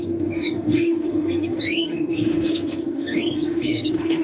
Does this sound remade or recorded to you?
remade